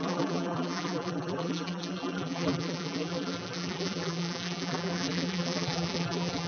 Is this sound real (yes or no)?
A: no